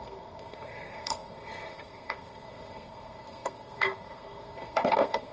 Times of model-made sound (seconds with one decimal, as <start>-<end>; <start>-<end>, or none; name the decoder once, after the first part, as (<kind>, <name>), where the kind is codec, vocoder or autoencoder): 0.0-5.3 (codec, SNAC)